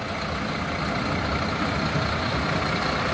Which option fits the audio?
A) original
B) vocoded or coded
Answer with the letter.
A